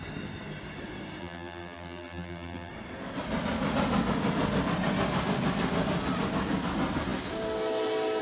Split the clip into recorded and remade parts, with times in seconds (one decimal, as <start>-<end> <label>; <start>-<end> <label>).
0.0-1.2 recorded; 1.2-2.7 remade; 2.7-8.2 recorded